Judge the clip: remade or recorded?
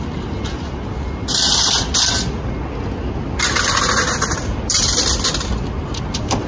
recorded